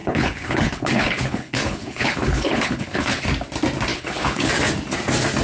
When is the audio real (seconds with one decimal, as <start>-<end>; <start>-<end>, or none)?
3.2-3.9; 4.5-5.4